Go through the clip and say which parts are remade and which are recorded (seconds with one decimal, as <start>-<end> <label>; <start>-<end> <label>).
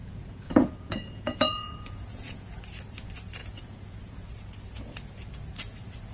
0.0-2.6 remade; 2.6-3.4 recorded; 3.4-4.3 remade; 4.3-6.1 recorded